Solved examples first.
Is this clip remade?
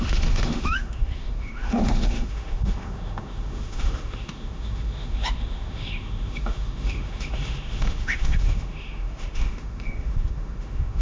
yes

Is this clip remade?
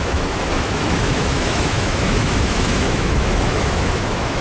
yes